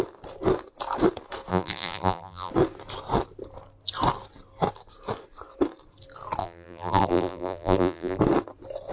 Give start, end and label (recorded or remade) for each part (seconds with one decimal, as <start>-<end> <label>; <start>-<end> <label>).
0.0-1.5 recorded; 1.5-2.5 remade; 2.5-6.4 recorded; 6.4-8.2 remade; 8.2-8.9 recorded